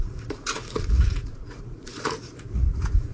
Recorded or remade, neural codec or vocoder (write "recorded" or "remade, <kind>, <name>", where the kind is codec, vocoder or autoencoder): remade, vocoder, Vocos